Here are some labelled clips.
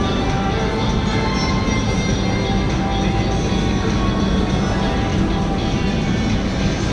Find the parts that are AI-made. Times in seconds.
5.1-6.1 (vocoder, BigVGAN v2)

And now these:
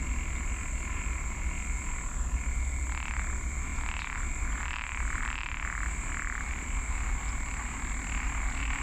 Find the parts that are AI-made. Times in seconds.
none

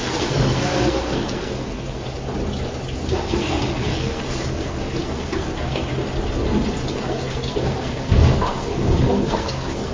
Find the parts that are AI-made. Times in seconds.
0.0-2.2 (codec, SNAC); 3.0-5.9; 6.9-9.9

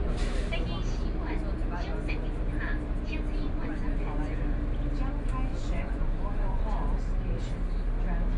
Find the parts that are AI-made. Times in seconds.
3.4-4.0 (vocoder, Vocos); 5.5-6.6

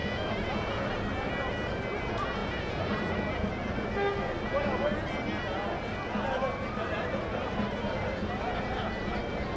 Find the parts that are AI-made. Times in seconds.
0.0-0.8 (vocoder, Vocos); 2.4-3.5